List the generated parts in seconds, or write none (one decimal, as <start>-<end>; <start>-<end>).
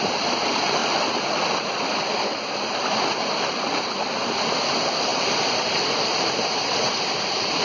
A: 5.1-7.1